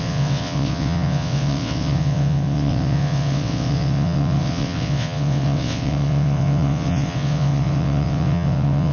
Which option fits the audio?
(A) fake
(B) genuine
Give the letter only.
A